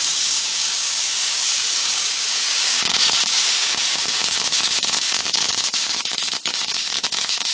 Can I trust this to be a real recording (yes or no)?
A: no